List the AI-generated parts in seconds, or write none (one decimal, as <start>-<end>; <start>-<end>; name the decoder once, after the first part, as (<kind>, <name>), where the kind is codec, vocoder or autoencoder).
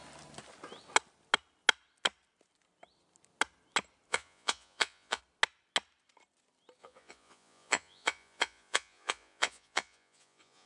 4.1-5.2 (vocoder, Vocos); 6.8-10.7